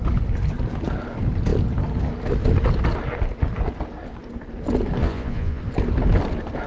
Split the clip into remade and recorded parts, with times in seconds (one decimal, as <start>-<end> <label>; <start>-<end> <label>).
0.0-5.0 recorded; 5.0-5.6 remade; 5.6-6.7 recorded